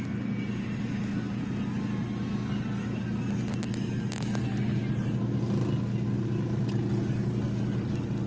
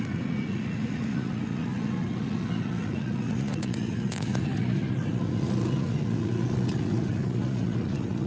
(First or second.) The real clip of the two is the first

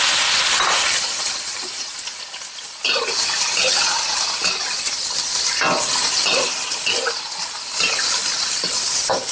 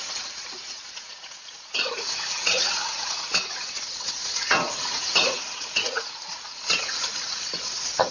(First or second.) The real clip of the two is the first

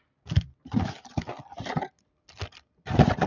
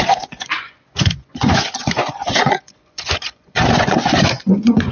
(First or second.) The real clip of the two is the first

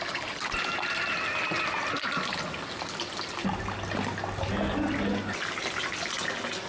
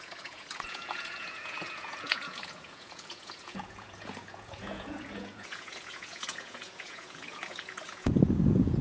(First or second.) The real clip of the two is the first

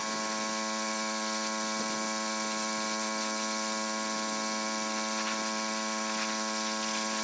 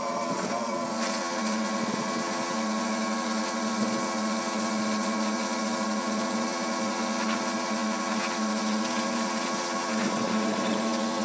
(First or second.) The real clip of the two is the first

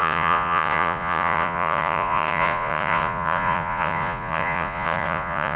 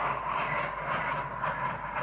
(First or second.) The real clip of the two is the second